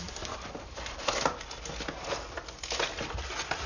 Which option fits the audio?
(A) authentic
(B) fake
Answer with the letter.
A